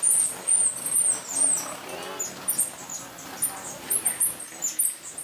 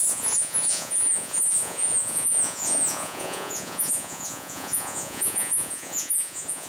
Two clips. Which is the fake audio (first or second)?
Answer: second